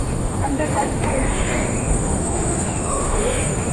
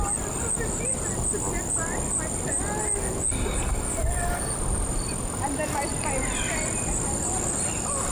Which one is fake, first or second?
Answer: first